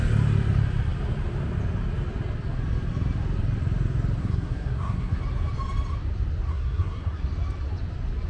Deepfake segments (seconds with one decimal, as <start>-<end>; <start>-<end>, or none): 4.2-5.2; 6.5-7.2